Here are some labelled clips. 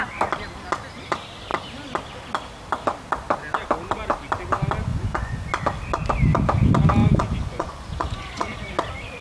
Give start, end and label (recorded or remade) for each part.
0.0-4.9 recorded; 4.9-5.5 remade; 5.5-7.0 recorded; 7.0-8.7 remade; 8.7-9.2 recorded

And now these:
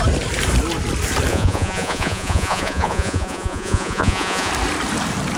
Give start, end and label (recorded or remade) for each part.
0.0-1.3 recorded; 1.3-4.5 remade; 4.5-5.4 recorded